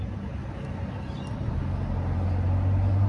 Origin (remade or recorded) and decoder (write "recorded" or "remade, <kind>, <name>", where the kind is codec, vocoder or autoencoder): recorded